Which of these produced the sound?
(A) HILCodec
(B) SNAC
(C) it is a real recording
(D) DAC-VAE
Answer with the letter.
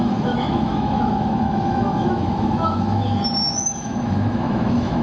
D